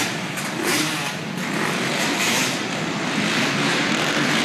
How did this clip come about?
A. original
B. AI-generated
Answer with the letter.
B